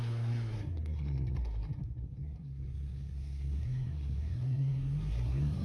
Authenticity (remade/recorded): remade